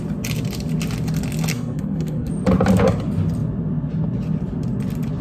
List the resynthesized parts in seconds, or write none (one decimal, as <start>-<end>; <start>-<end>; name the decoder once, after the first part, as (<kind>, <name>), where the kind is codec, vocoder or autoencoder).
1.5-2.3 (codec, SNAC)